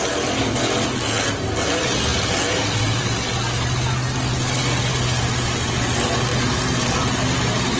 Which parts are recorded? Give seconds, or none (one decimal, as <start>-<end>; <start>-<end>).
0.0-7.8